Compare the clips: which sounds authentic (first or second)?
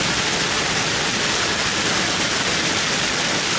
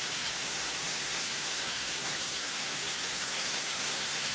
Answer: first